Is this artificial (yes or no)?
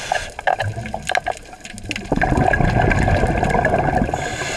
no